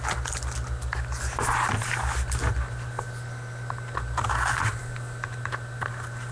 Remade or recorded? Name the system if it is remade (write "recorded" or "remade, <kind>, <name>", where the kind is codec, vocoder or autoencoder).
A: recorded